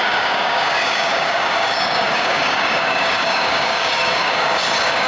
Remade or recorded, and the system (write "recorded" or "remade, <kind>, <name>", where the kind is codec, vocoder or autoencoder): remade, codec, DAC